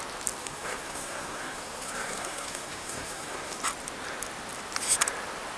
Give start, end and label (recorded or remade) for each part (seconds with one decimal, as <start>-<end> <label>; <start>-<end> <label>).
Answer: 0.0-0.4 recorded; 0.4-3.6 remade; 3.6-5.6 recorded